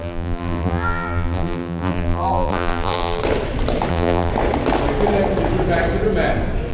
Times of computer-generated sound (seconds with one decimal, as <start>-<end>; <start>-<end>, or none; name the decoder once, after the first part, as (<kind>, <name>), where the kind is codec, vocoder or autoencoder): 0.0-3.2 (vocoder, BigVGAN v2); 3.9-4.3